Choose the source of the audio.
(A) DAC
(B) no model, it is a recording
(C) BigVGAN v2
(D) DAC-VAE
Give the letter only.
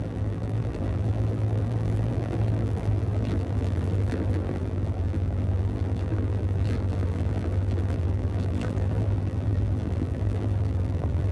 C